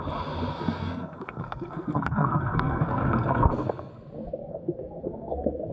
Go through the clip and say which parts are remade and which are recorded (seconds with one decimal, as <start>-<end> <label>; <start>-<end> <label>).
0.0-0.5 recorded; 0.5-3.9 remade; 3.9-4.4 recorded; 4.4-5.7 remade